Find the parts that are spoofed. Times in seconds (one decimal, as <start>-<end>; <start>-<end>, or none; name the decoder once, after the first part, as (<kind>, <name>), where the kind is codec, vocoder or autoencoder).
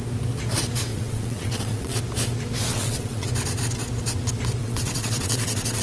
0.9-2.0 (vocoder, WaveNeXt); 2.7-3.3; 4.6-5.8